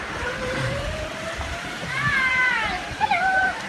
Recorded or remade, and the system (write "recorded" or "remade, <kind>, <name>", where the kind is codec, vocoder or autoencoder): remade, vocoder, BigVGAN v2